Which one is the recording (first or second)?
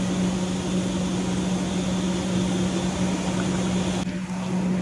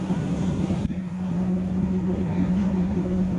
first